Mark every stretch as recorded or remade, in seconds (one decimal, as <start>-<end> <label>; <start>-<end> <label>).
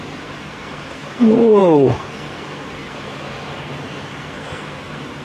0.0-5.2 remade